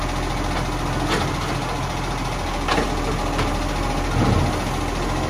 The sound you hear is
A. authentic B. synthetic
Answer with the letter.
A